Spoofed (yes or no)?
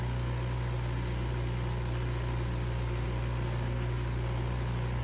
no